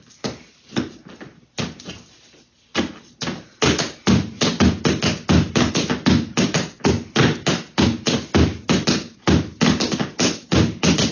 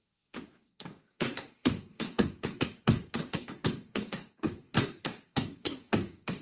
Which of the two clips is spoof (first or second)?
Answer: second